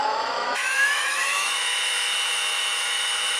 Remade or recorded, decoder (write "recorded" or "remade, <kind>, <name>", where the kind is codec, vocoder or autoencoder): remade, autoencoder, DAC-VAE